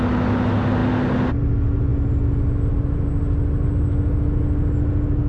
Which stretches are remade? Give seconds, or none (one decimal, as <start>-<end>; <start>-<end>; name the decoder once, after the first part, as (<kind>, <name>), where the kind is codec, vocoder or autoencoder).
none